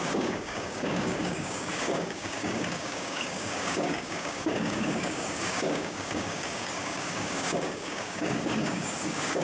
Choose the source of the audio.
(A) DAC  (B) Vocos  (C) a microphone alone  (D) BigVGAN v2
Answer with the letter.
A